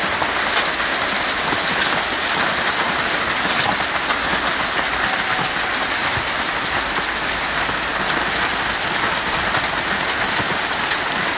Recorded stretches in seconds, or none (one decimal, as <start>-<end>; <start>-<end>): 0.0-6.0; 7.0-11.4